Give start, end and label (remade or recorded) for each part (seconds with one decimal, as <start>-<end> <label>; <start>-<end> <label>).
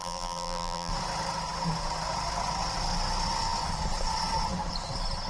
0.0-0.9 remade; 0.9-5.3 recorded